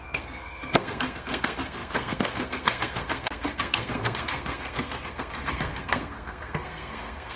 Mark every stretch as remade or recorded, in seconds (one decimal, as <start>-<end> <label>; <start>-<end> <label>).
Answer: 0.0-7.4 remade